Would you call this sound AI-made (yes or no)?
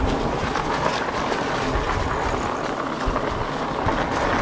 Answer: no